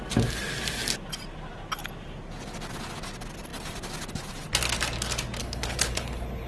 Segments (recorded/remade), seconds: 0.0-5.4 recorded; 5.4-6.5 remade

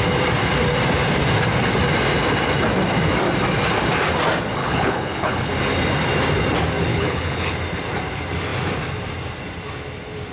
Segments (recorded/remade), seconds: 0.0-4.6 recorded; 4.6-5.5 remade; 5.5-6.9 recorded; 6.9-7.5 remade; 7.5-10.3 recorded